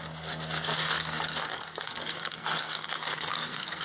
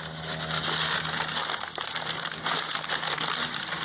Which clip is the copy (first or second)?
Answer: first